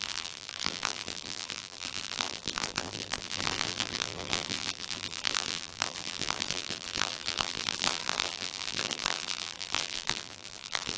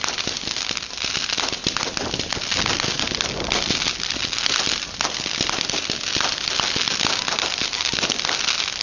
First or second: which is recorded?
second